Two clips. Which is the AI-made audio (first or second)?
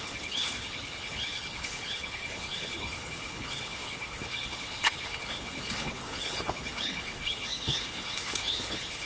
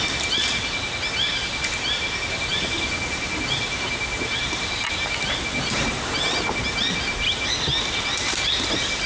first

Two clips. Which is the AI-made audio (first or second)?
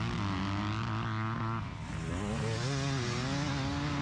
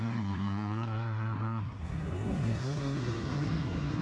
second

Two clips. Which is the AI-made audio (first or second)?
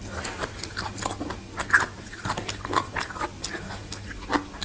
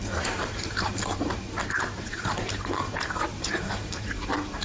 second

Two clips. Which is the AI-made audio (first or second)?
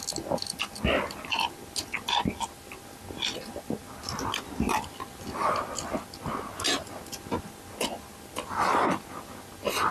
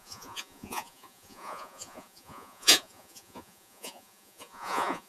second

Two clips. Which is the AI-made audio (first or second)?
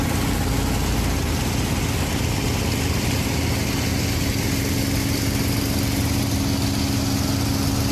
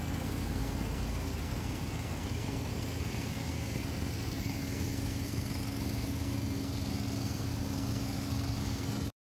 second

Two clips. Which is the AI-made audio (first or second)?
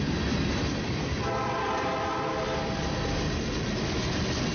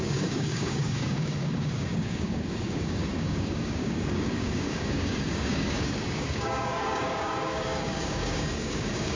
second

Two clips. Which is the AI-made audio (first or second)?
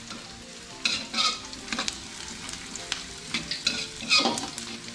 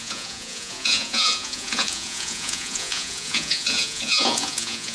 second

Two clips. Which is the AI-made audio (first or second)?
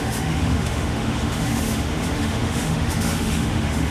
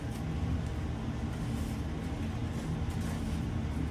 first